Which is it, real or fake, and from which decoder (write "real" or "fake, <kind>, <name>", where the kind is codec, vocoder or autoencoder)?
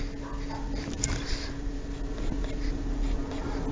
real